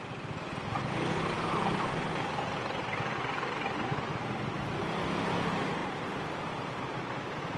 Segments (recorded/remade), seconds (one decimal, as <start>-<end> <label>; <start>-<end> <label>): 0.0-5.8 recorded; 5.8-7.6 remade